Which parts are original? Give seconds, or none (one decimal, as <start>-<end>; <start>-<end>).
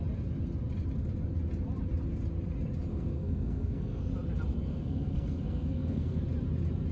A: 0.0-2.9; 4.1-4.5; 6.2-6.9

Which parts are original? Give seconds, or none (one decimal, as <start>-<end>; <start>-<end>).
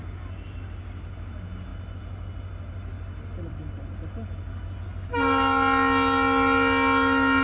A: 0.0-1.7; 5.1-7.4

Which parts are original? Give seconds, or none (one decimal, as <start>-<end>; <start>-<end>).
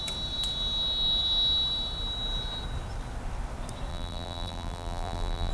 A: 0.0-3.9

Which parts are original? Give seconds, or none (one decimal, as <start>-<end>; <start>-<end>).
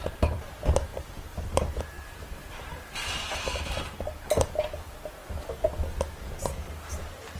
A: 5.2-6.9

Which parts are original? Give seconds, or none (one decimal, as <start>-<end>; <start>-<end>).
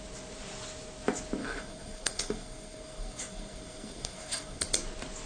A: 0.0-1.4; 4.6-5.3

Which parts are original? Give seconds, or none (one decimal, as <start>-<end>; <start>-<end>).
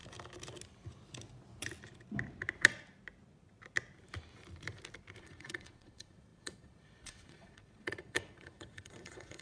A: 0.0-5.2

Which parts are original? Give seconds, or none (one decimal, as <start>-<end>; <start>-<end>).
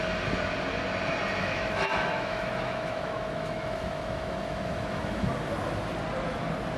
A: 0.0-1.4; 5.3-6.8